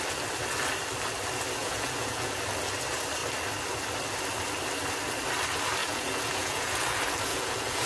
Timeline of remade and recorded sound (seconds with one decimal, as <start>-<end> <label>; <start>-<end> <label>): 0.0-1.6 recorded; 1.6-2.4 remade; 2.4-5.8 recorded; 5.8-6.8 remade; 6.8-7.3 recorded; 7.3-7.9 remade